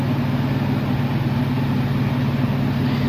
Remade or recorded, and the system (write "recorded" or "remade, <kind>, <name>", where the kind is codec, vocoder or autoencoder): recorded